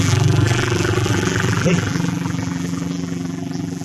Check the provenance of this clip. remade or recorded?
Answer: remade